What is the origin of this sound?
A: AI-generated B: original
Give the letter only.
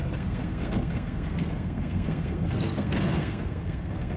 A